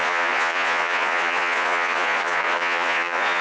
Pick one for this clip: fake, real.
fake